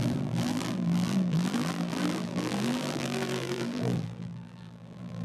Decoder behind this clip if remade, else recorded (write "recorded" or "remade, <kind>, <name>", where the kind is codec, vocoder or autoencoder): remade, vocoder, BigVGAN v2